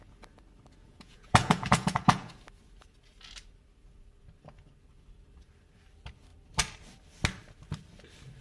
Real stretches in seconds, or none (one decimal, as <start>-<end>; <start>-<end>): 0.0-0.8; 2.4-8.4